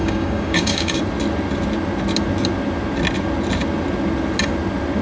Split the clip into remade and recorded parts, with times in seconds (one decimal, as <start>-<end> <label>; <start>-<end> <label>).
0.0-1.0 remade; 1.0-5.0 recorded